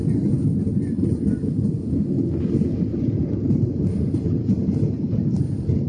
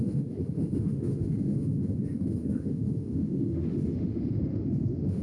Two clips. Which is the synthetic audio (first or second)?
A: second